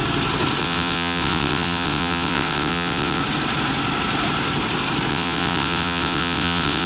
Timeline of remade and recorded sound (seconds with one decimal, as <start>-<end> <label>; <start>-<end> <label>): 0.0-0.6 recorded; 0.6-3.2 remade; 3.2-5.1 recorded; 5.1-6.9 remade